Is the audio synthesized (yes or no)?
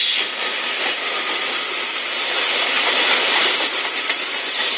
no